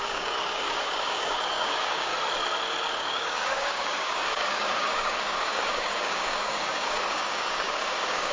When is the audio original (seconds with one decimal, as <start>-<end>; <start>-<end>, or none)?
2.1-2.9